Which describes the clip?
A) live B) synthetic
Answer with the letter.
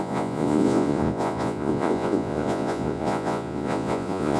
B